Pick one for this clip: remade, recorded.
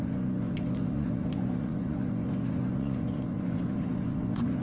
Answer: remade